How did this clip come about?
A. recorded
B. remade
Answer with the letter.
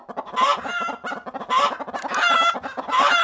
A